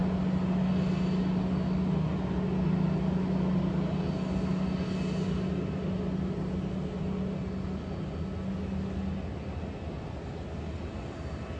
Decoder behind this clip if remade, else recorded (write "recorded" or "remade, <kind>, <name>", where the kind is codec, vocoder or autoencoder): recorded